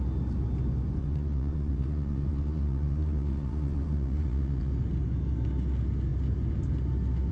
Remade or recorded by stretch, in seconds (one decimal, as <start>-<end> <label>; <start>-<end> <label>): 0.0-1.0 recorded; 1.0-4.7 remade; 4.7-7.3 recorded